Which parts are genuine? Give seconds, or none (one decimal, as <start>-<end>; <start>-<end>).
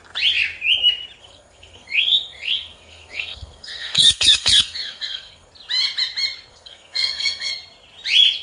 0.0-1.2; 5.5-6.5; 7.5-8.4